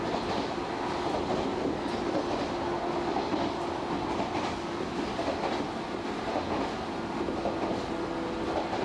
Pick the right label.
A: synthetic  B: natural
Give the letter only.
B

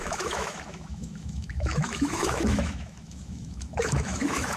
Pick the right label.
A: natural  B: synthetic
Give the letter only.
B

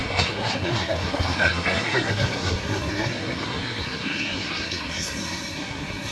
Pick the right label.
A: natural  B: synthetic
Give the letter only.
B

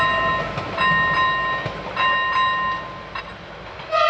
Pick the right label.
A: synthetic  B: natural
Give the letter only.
B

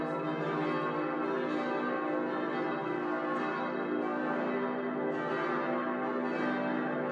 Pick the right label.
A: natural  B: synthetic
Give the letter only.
A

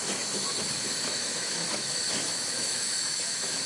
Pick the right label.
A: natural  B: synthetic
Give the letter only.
B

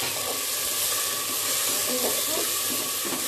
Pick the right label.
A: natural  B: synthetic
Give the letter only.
A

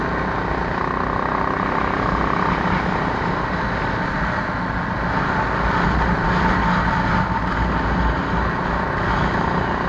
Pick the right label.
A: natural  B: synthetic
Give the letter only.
A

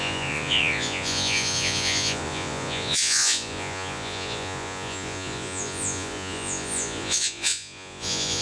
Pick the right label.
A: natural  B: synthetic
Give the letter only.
B